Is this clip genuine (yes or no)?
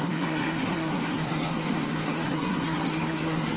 no